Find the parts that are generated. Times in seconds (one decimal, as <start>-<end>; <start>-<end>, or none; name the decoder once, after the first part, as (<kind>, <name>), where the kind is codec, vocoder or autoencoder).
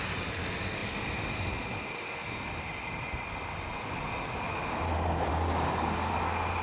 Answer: 5.3-6.1 (codec, DAC)